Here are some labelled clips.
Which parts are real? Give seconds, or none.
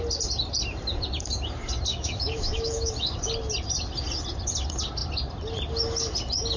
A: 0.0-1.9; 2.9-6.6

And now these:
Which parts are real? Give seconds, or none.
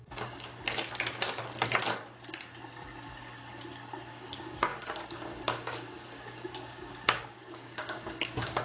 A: 0.5-4.1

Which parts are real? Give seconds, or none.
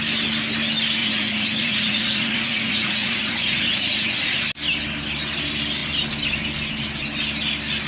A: 0.0-1.0; 4.4-7.9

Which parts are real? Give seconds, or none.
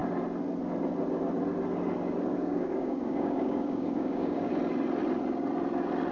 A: 0.0-2.3; 4.5-6.1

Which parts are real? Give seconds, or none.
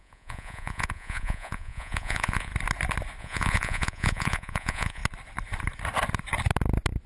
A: 2.5-3.2; 5.0-7.1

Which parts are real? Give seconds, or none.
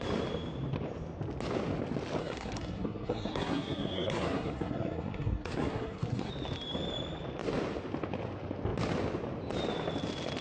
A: 0.0-2.2; 6.3-10.4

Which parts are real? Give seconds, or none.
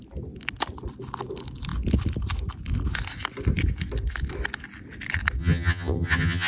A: 0.0-5.4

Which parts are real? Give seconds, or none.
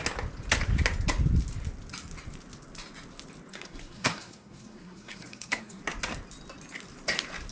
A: 0.0-3.5; 5.8-7.5